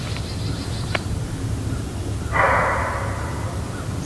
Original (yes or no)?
yes